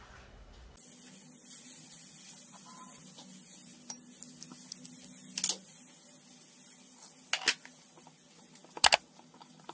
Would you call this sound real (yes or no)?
yes